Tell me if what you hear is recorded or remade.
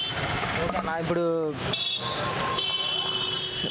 recorded